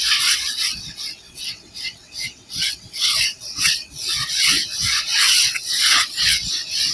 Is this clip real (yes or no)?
no